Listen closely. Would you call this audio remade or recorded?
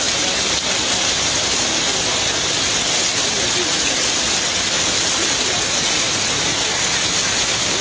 recorded